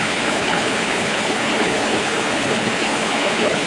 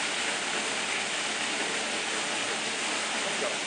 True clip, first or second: second